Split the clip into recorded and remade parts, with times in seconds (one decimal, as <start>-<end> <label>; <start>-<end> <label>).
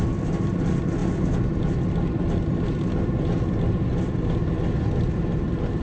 0.0-5.8 recorded